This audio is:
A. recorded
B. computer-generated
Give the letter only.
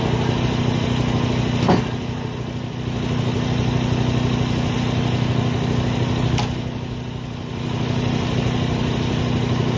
A